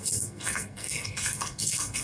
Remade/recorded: remade